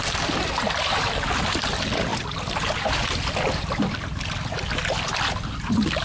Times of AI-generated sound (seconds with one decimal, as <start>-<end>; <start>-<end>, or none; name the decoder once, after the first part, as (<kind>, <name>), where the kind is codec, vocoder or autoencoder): none